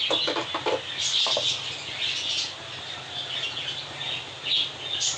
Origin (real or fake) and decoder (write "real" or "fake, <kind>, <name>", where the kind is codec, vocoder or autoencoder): real